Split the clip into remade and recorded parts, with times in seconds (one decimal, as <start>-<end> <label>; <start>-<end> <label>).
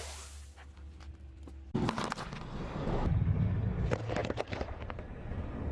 0.0-4.2 recorded; 4.2-5.2 remade; 5.2-5.7 recorded